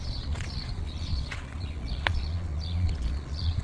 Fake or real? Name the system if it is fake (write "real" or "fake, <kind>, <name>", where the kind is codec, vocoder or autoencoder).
fake, vocoder, Vocos